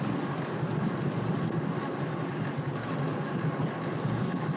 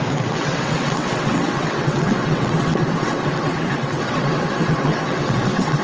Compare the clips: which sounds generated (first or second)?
second